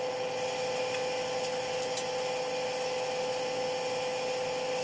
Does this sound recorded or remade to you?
recorded